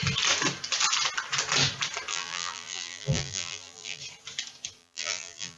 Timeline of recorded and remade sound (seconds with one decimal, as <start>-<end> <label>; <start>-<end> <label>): 0.0-2.1 recorded; 2.1-4.0 remade; 4.0-4.8 recorded; 4.8-5.6 remade